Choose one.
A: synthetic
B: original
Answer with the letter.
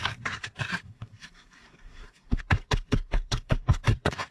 A